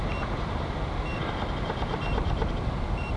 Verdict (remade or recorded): recorded